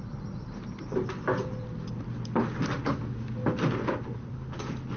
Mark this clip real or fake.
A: real